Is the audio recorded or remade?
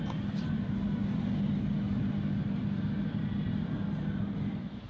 recorded